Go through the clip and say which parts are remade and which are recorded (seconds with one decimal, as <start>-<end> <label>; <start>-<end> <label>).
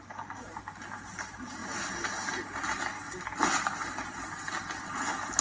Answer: 0.0-5.4 recorded